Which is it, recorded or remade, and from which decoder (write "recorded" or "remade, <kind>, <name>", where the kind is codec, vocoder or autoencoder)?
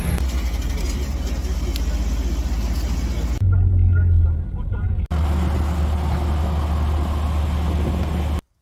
recorded